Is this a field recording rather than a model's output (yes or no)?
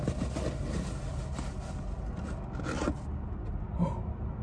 yes